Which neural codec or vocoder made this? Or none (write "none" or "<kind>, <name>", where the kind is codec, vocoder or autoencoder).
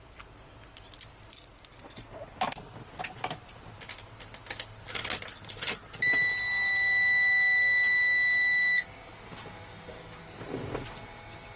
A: none